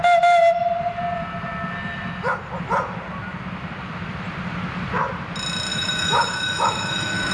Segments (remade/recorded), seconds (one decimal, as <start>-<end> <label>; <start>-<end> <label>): 0.0-5.7 recorded; 5.7-7.3 remade